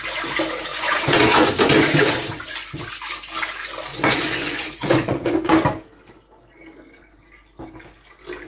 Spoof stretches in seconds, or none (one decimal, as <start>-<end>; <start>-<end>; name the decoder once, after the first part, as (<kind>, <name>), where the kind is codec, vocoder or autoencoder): 0.7-1.5 (vocoder, Vocos); 3.9-5.5